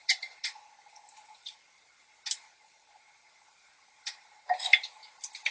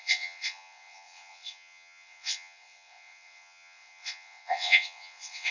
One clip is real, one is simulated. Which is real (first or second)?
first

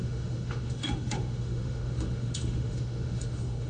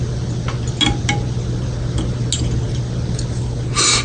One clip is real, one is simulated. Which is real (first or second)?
second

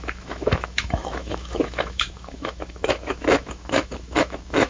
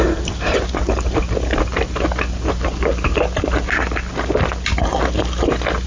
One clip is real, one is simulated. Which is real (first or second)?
second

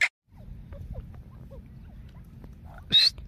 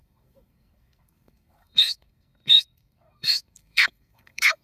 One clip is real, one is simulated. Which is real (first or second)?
first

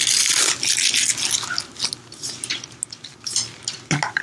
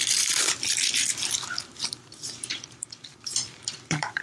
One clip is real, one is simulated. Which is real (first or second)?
first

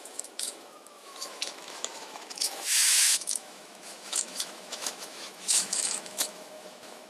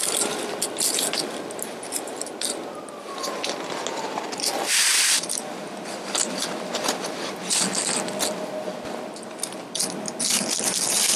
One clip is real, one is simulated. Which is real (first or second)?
second